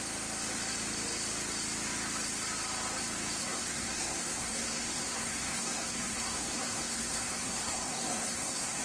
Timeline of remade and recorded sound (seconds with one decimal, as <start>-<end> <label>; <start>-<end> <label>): 0.0-3.4 recorded; 3.4-8.8 remade